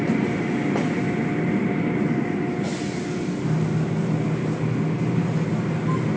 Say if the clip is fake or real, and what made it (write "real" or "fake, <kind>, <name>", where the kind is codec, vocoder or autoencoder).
real